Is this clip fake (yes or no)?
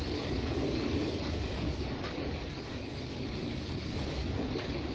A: yes